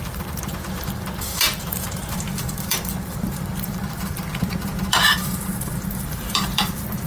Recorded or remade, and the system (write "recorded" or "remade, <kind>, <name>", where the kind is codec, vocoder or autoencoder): remade, vocoder, BigVGAN v2